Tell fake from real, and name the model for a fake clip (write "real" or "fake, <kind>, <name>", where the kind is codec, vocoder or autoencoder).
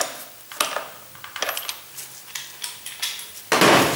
real